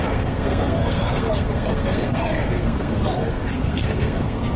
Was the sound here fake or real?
fake